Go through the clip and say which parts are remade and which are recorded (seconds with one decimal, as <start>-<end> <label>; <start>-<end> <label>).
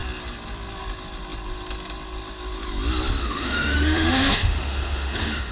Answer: 0.0-3.2 recorded; 3.2-5.5 remade